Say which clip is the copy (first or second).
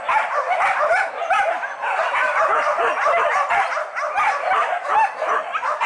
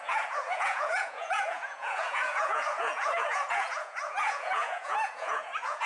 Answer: second